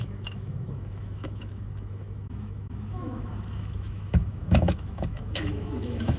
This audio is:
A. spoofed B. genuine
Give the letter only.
A